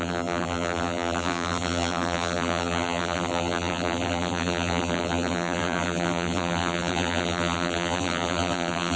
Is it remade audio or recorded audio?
remade